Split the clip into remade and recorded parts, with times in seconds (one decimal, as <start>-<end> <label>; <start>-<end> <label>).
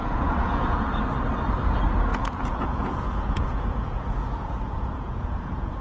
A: 0.0-1.0 remade; 1.0-2.1 recorded; 2.1-5.8 remade